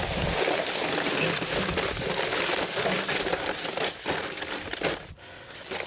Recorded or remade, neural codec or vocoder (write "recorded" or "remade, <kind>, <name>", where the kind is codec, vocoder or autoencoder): recorded